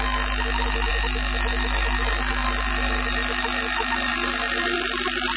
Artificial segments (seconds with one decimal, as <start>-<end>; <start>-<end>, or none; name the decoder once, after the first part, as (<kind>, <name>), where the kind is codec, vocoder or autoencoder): none